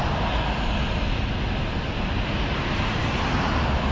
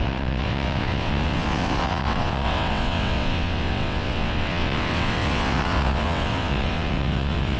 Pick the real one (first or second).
first